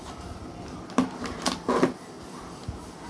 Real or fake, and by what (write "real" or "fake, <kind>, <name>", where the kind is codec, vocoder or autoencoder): real